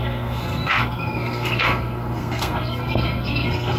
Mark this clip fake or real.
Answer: fake